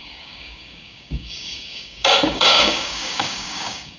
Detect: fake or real fake